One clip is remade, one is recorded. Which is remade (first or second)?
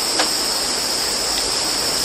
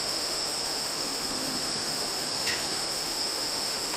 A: second